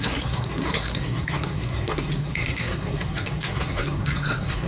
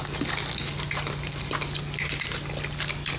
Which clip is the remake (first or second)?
first